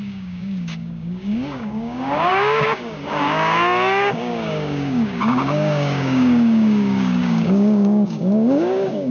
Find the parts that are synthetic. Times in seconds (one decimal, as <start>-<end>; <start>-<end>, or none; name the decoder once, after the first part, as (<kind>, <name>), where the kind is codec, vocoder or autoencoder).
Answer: 0.0-9.1 (codec, DAC)